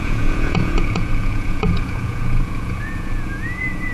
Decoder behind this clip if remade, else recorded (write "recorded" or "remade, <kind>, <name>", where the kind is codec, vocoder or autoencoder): remade, vocoder, Vocos